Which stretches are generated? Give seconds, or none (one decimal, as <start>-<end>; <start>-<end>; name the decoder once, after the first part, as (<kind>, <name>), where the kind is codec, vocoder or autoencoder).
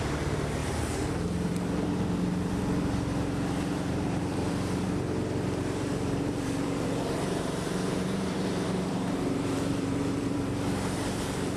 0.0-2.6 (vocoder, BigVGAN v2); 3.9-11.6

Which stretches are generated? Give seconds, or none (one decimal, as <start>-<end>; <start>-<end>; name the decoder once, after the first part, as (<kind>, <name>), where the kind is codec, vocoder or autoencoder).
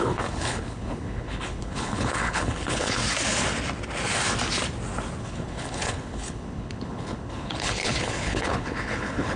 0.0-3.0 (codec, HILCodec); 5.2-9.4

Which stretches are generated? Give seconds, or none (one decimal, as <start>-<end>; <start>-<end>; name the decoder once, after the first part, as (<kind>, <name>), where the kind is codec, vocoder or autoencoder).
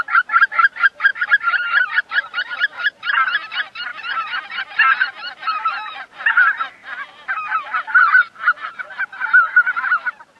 1.1-2.0 (vocoder, BigVGAN v2); 3.9-6.2